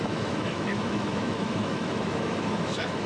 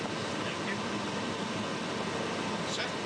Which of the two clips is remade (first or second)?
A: first